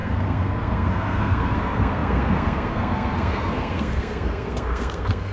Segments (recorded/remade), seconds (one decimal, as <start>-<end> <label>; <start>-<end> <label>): 0.0-5.3 remade